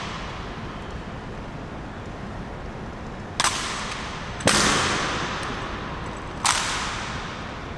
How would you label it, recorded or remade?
recorded